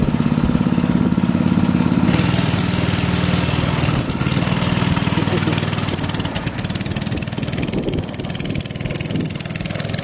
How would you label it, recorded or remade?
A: recorded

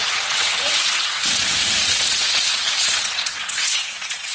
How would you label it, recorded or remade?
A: remade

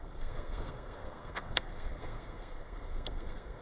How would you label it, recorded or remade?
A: remade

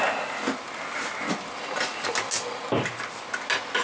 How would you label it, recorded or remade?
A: recorded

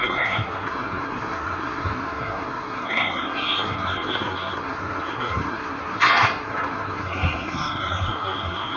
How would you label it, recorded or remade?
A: remade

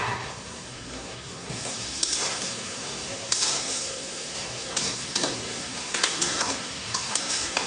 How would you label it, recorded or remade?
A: remade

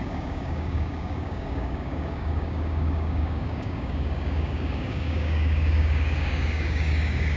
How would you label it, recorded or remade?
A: remade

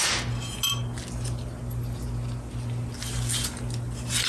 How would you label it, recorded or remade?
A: recorded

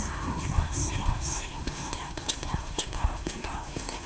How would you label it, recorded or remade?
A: remade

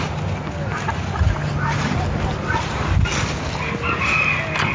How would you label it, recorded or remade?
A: recorded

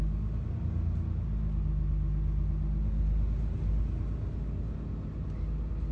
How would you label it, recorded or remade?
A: recorded